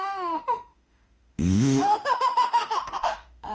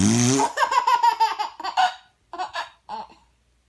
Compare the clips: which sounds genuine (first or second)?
second